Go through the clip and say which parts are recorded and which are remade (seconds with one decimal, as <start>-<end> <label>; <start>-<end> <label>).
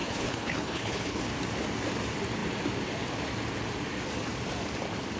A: 0.0-1.2 remade; 1.2-5.2 recorded